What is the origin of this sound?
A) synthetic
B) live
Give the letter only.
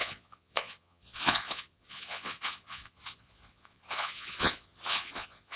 A